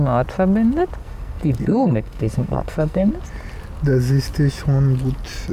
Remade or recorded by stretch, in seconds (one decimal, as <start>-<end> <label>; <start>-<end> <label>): 0.0-1.0 recorded; 1.0-3.1 remade; 3.1-5.5 recorded